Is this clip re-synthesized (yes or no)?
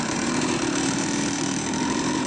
yes